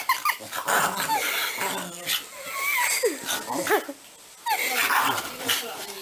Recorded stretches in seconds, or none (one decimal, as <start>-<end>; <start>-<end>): 1.4-5.0